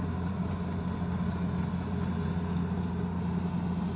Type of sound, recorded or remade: recorded